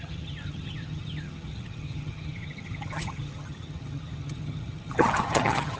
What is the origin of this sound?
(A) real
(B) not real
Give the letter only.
B